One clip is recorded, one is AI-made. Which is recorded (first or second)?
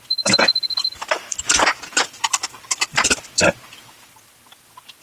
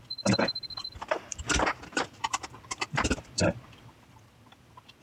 first